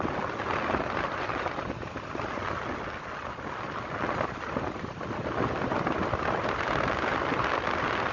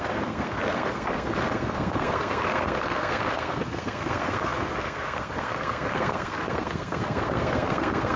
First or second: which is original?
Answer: first